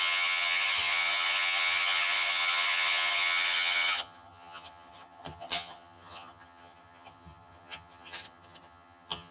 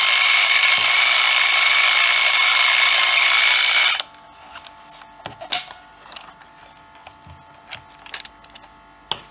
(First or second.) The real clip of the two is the second